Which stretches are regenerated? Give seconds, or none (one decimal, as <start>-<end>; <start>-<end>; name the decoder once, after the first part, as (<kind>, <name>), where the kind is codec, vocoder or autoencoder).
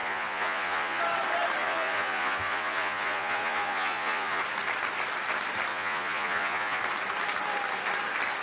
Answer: 0.0-1.0 (vocoder, Vocos); 1.6-4.4; 5.7-6.8